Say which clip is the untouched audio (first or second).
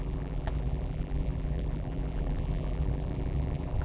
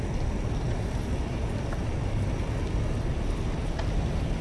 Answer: second